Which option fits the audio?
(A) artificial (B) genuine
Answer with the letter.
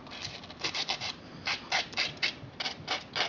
A